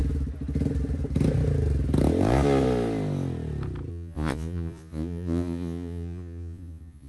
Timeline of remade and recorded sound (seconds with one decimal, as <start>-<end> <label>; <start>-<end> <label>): 0.0-3.9 recorded; 3.9-7.1 remade